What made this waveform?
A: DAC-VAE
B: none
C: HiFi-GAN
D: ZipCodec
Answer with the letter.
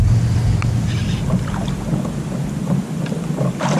B